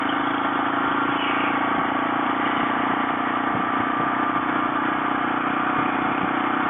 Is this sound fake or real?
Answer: real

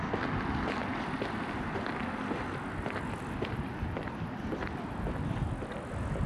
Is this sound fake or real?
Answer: real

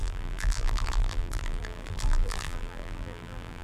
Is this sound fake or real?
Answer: fake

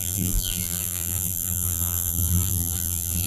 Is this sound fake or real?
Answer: fake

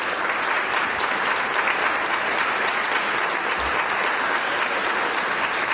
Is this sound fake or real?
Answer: real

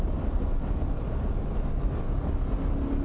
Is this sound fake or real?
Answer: real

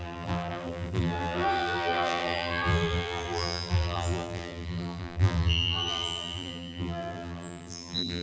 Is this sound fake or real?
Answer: fake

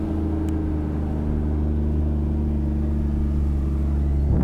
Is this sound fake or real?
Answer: real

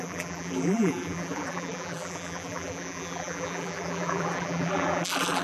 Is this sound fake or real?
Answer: fake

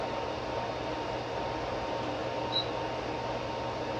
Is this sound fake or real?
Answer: real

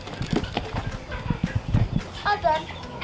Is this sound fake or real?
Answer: real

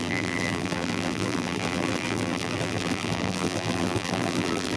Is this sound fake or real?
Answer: fake